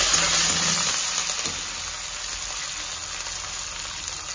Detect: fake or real real